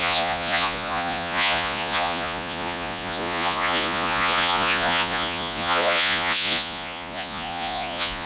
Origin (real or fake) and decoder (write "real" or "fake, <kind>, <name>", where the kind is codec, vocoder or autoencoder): fake, vocoder, Vocos